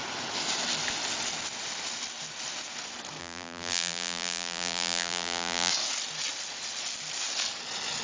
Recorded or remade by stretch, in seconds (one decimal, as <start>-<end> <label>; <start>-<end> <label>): 0.0-3.2 recorded; 3.2-5.7 remade; 5.7-8.0 recorded